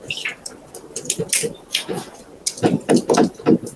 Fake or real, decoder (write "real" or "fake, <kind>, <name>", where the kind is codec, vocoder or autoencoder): real